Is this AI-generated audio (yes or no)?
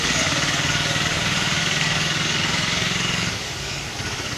yes